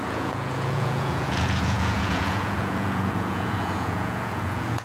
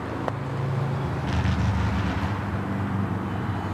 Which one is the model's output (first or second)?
first